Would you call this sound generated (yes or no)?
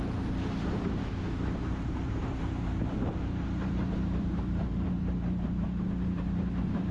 yes